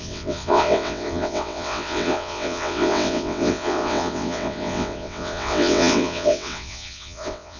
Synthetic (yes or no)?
yes